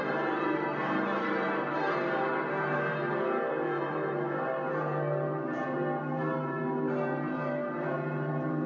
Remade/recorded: remade